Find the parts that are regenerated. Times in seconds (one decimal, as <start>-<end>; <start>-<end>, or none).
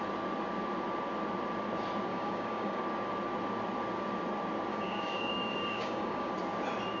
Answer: 2.1-2.8; 4.7-6.3